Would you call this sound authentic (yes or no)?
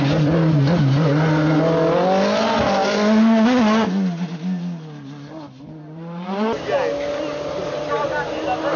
yes